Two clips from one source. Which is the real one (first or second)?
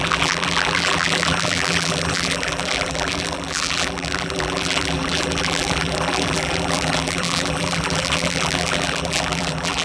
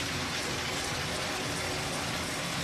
second